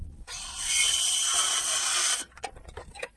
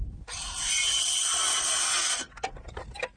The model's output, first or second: first